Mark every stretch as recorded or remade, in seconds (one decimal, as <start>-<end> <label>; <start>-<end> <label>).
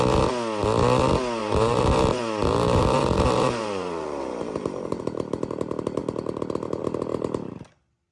0.0-1.4 recorded; 1.4-5.0 remade; 5.0-8.1 recorded